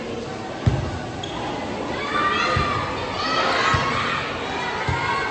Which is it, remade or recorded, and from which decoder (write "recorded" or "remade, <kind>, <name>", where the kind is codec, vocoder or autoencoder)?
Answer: recorded